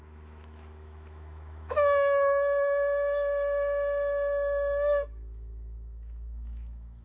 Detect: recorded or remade remade